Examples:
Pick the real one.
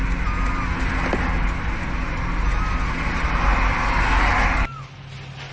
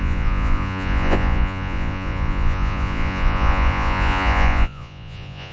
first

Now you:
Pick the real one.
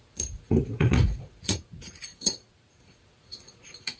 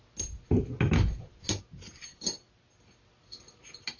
second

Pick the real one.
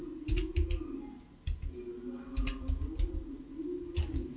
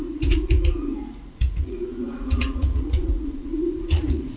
first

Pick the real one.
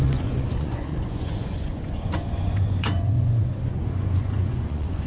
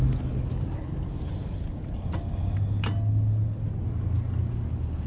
second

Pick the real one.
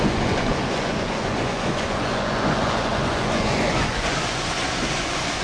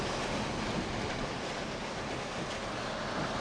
second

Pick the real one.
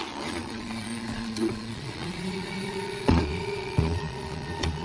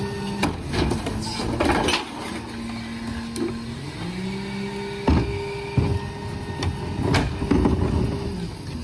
second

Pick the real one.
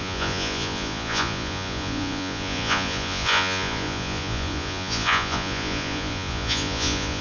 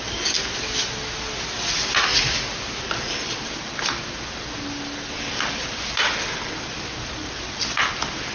second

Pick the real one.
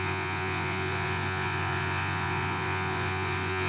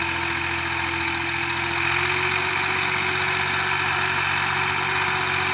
second